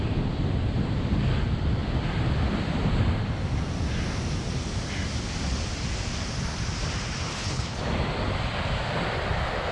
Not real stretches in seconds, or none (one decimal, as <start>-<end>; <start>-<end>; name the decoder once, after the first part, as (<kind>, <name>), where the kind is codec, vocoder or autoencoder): 7.3-7.8 (codec, HILCodec)